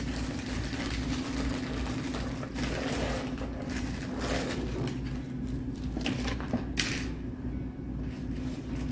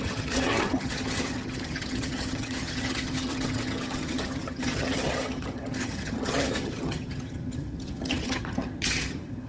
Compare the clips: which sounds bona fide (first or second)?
first